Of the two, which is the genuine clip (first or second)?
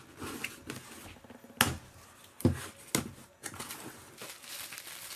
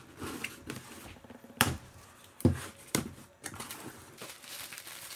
first